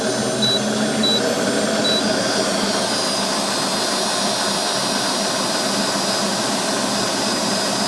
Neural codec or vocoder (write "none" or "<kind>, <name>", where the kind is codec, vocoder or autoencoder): none